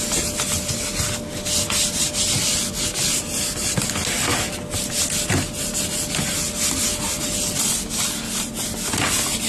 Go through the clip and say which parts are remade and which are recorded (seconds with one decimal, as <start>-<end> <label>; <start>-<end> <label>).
0.0-9.5 recorded